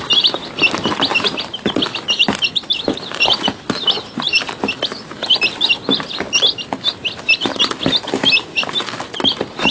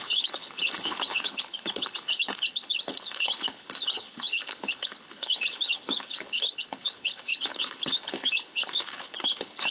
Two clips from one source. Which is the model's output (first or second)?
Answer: second